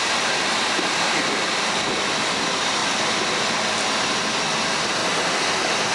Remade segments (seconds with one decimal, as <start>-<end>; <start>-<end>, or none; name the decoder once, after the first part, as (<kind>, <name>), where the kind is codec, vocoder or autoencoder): 0.0-2.8 (vocoder, BigVGAN v2); 4.6-5.0